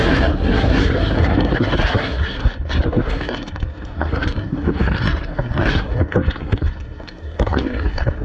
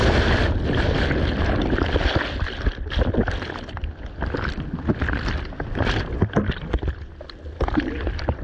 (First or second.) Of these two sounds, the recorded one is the second